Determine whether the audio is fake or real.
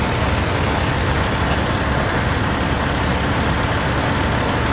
real